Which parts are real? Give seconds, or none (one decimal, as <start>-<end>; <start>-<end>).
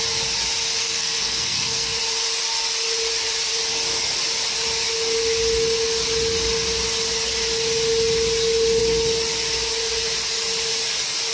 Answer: 0.0-0.8; 2.0-11.3